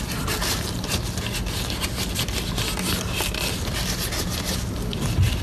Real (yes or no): yes